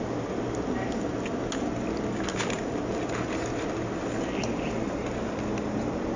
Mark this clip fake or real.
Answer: real